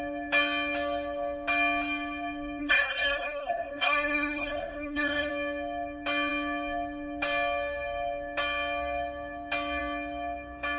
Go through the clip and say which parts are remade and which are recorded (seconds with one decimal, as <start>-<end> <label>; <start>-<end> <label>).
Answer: 0.0-2.6 recorded; 2.6-5.3 remade; 5.3-10.8 recorded